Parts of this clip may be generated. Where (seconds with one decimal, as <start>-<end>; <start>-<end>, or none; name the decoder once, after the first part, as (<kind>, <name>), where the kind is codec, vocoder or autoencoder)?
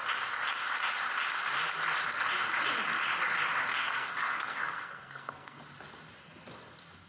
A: 3.8-5.6 (codec, SNAC)